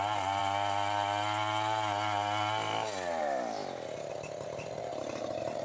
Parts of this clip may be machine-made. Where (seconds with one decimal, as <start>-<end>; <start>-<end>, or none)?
none